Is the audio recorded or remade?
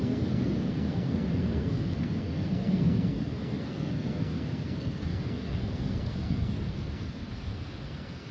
remade